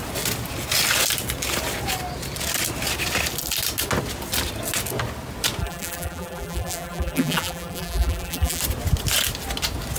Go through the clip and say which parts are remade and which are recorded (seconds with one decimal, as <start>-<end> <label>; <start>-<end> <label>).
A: 0.0-5.6 recorded; 5.6-8.6 remade; 8.6-10.0 recorded